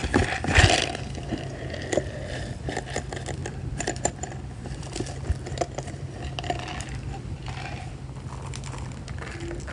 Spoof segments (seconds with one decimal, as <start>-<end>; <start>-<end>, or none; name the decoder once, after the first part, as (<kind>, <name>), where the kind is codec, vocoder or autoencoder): 0.0-3.0 (vocoder, BigVGAN v2); 3.4-7.9